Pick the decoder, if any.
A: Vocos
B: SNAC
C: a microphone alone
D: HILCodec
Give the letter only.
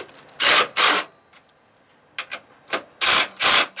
C